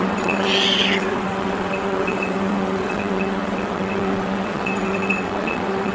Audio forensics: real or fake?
fake